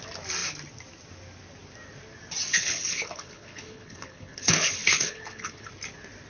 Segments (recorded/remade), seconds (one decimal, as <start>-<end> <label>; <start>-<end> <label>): 0.0-2.5 recorded; 2.5-5.7 remade; 5.7-6.3 recorded